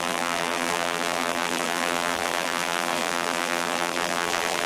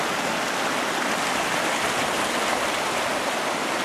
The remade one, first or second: first